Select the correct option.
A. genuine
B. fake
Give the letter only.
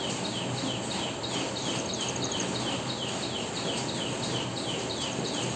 A